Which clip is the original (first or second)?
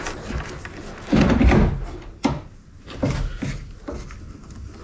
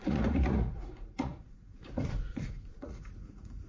first